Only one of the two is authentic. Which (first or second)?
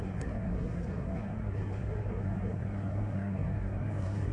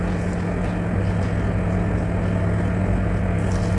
second